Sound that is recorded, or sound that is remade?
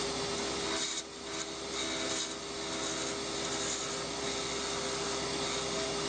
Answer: recorded